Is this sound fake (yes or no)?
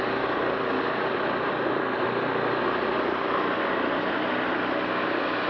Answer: no